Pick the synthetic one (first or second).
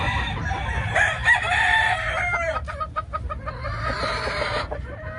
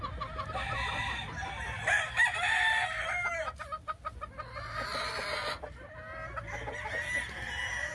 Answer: first